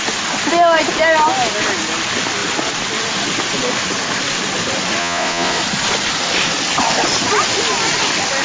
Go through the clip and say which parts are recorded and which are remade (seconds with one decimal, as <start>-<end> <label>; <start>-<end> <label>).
0.0-5.0 recorded; 5.0-5.6 remade; 5.6-8.4 recorded